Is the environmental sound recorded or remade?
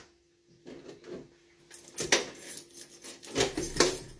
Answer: recorded